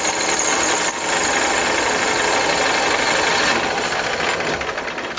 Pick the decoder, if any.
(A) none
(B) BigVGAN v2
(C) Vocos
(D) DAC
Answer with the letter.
A